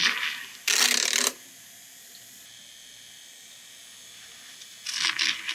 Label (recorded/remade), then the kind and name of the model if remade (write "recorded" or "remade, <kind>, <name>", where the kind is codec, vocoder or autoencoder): recorded